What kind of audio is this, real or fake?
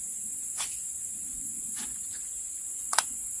fake